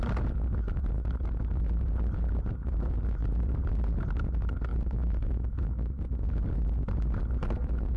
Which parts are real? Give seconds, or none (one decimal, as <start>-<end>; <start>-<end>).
0.0-4.7; 6.0-8.0